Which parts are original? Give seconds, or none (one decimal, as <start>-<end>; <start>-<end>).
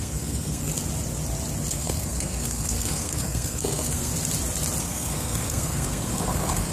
0.7-1.7; 4.1-4.8